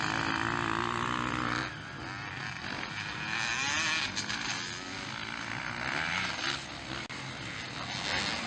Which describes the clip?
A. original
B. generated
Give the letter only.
A